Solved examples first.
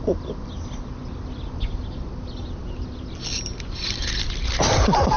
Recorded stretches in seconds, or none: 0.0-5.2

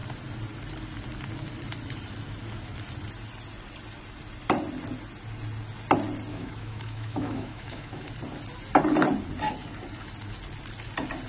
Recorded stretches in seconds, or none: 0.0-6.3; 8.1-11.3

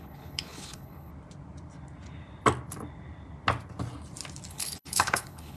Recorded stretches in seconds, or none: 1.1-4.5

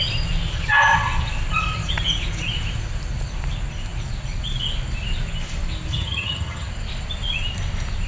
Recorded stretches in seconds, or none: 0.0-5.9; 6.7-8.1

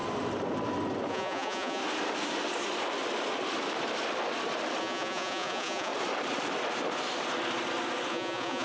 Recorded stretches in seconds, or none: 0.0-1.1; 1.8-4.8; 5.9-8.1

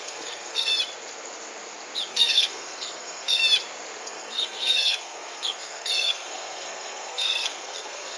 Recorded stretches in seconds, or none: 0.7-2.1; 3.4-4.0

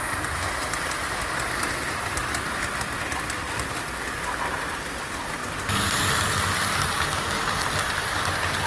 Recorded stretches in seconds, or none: 0.0-8.7

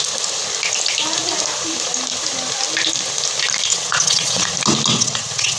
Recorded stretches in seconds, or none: 0.0-3.7; 4.5-4.9